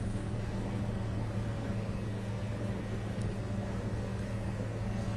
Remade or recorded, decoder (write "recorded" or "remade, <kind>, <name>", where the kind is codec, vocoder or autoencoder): remade, codec, SNAC